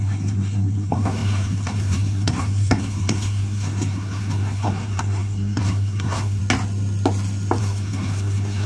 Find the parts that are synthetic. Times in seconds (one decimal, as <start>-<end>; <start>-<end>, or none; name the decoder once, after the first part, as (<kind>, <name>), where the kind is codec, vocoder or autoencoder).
0.0-6.4 (codec, SNAC); 7.6-8.7